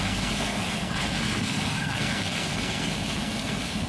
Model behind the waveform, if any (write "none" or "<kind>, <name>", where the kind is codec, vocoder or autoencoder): codec, SNAC